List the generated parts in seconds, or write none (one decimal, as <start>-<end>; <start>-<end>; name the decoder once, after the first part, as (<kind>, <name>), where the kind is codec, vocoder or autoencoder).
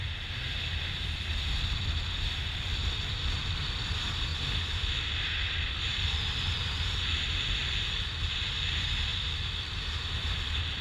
none